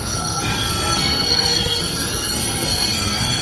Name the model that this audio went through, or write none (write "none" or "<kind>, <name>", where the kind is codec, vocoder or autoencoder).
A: codec, SNAC